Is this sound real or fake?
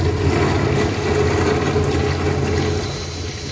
real